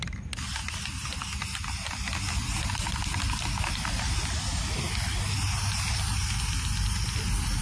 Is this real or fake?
real